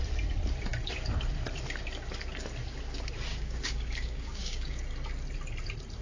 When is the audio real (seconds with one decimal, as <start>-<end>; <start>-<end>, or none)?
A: 0.0-3.3; 4.8-6.0